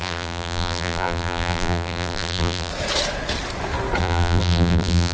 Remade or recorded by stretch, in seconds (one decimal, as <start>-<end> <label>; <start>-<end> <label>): 0.0-2.7 remade; 2.7-4.0 recorded; 4.0-5.1 remade